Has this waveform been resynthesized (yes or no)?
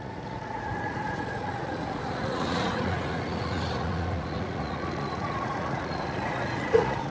yes